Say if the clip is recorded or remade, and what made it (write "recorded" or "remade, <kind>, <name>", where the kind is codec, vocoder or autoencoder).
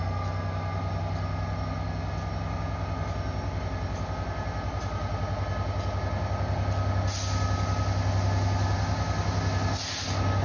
recorded